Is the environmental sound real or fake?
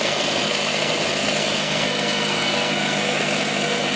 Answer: fake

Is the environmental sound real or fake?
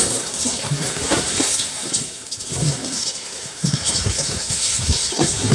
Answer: fake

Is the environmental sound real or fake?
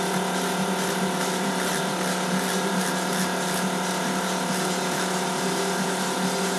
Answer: real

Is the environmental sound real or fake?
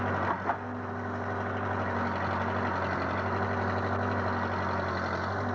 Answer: real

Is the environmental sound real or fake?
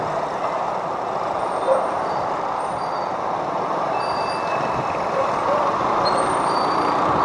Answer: real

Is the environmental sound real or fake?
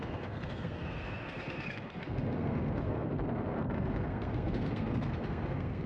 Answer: fake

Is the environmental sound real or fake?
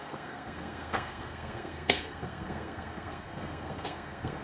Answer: fake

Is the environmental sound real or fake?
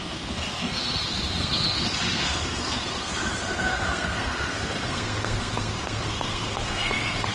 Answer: fake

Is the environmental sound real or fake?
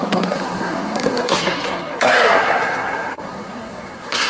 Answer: fake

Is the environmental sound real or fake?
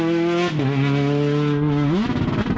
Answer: real